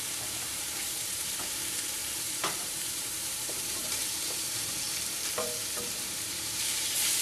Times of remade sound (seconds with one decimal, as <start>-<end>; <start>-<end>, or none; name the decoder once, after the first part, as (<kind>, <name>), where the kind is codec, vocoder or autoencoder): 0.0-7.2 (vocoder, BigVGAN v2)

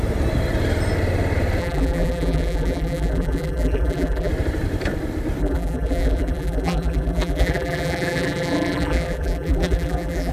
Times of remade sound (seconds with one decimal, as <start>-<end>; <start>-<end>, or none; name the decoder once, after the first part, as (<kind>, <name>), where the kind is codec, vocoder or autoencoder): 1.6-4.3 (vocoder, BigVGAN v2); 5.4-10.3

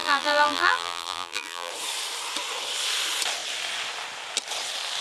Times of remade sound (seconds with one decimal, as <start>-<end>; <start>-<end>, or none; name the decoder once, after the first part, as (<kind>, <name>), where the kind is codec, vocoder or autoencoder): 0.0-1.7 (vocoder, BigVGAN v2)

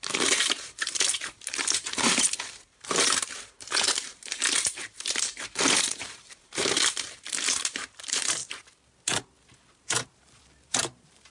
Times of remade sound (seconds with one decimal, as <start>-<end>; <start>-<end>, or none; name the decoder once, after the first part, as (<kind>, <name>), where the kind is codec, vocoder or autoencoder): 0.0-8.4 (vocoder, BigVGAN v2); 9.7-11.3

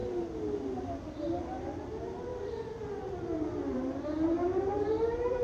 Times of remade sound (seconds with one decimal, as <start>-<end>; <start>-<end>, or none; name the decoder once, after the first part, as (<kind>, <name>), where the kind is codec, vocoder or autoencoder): 0.8-5.4 (vocoder, BigVGAN v2)

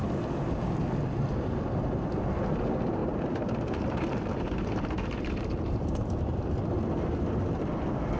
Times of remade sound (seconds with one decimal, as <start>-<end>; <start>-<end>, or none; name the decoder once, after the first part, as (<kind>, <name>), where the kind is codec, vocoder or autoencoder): 1.3-2.3 (vocoder, BigVGAN v2); 3.0-6.5

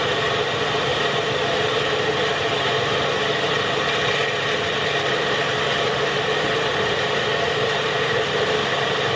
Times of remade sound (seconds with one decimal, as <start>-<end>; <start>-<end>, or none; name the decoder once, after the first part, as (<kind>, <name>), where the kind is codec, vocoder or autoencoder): 0.0-3.2 (vocoder, BigVGAN v2); 5.1-9.2

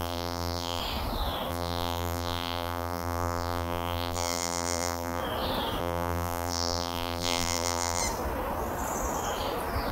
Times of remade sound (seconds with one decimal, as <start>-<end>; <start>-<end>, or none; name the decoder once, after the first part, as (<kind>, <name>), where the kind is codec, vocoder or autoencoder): 0.0-0.8 (vocoder, BigVGAN v2); 1.5-5.2; 5.8-8.0